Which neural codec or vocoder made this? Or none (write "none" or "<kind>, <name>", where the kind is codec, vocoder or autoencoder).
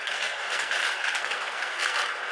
codec, SNAC